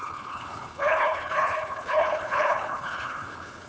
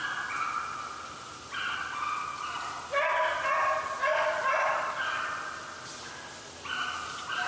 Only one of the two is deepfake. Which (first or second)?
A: first